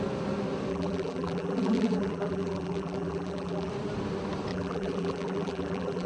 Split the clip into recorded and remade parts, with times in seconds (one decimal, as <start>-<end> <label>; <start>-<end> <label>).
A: 0.0-0.7 recorded; 0.7-3.7 remade; 3.7-4.5 recorded; 4.5-6.1 remade